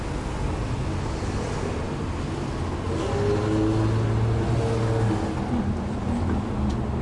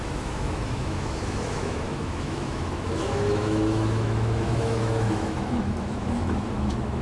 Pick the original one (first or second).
first